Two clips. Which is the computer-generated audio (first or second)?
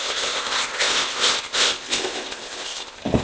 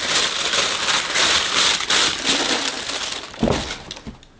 first